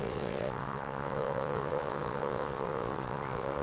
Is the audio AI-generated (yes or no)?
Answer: yes